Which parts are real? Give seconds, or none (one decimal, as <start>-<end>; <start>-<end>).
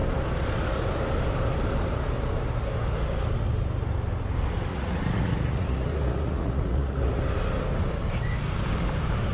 0.0-4.7; 7.2-9.3